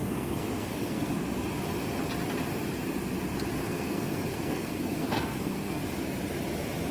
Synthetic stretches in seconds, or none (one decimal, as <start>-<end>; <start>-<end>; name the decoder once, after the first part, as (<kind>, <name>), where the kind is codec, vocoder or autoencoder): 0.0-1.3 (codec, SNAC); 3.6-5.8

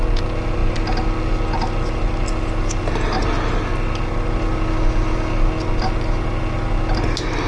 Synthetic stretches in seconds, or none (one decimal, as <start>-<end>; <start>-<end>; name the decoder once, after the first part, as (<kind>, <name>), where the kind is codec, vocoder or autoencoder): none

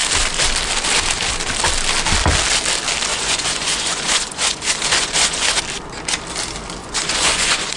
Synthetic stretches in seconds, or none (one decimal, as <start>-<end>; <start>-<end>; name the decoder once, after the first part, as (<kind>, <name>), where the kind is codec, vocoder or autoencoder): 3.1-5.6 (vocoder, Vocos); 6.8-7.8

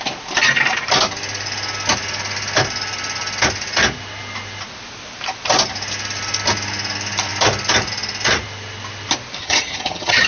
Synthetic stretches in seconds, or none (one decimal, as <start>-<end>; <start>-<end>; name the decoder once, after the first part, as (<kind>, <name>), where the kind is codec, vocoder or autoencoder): 9.4-10.3 (vocoder, HiFi-GAN)